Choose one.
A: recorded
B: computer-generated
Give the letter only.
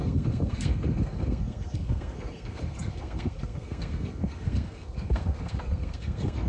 B